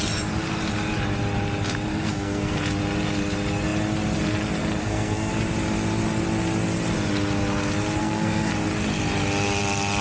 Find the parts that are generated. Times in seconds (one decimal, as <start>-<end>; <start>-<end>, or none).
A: 1.9-2.6; 4.8-5.3; 8.0-8.5